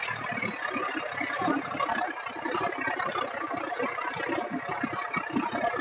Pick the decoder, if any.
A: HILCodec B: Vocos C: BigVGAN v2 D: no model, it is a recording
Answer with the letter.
D